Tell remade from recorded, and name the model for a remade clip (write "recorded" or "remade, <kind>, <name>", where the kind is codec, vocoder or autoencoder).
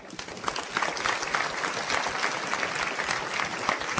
recorded